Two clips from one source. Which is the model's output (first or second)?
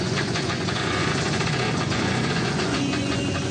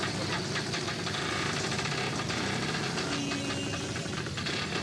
first